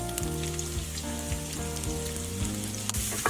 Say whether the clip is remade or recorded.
recorded